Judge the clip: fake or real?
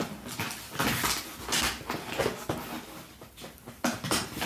real